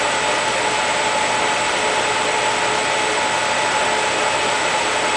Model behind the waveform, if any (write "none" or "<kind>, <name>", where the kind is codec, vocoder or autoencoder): none